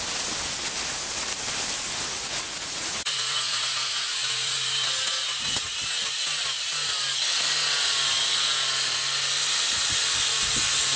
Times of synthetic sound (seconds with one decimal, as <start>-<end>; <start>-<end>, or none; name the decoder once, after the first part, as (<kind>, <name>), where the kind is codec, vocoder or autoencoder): 2.1-4.7 (vocoder, Vocos)